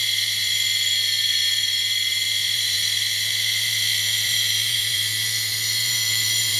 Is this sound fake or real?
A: fake